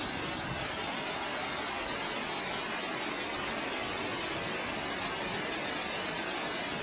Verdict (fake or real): real